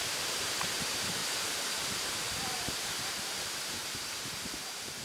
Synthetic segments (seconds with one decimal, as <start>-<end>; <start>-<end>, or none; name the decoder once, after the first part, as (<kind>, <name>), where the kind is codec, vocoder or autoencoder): 0.0-1.2 (vocoder, BigVGAN v2); 2.2-5.0